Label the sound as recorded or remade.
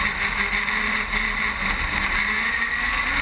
recorded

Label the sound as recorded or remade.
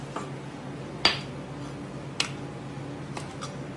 recorded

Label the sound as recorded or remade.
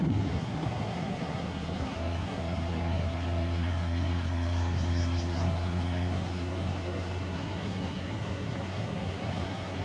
remade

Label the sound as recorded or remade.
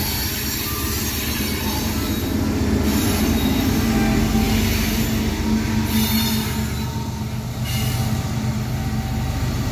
recorded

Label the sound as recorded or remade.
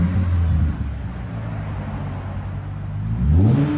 recorded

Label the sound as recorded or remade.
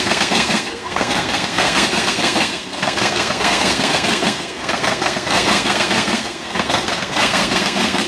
remade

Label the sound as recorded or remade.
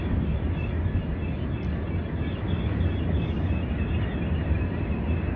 recorded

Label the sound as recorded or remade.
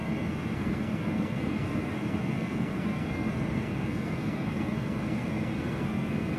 remade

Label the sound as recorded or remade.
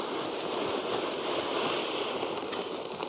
recorded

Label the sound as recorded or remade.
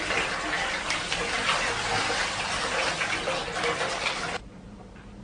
recorded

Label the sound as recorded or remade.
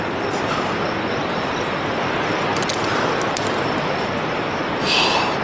recorded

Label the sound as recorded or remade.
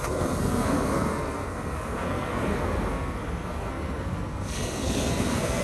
remade